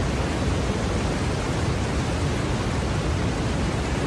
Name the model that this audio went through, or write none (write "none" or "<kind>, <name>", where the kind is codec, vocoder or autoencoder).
none